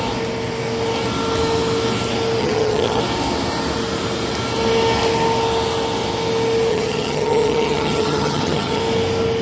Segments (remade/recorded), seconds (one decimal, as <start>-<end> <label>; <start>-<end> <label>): 0.0-2.4 recorded; 2.4-3.0 remade; 3.0-6.7 recorded; 6.7-8.8 remade; 8.8-9.4 recorded